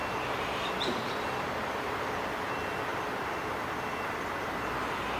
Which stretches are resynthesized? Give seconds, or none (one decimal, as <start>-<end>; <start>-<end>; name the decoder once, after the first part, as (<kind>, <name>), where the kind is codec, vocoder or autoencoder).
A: none